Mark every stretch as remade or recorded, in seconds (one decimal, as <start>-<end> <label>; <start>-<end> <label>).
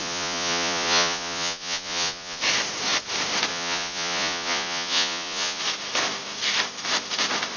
0.0-2.4 remade; 2.4-3.5 recorded; 3.5-5.6 remade; 5.6-7.6 recorded